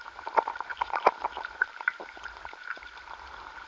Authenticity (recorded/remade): remade